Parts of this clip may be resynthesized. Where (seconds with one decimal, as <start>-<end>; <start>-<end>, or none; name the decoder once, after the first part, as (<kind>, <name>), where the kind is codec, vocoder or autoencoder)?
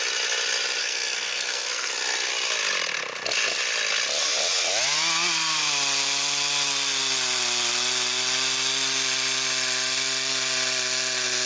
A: 0.8-1.9 (codec, SNAC)